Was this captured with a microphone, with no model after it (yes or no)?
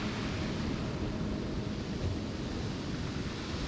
yes